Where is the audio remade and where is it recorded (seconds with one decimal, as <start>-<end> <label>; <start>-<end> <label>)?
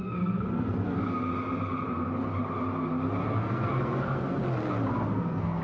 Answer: 0.0-1.3 remade; 1.3-3.2 recorded; 3.2-4.4 remade; 4.4-4.9 recorded; 4.9-5.6 remade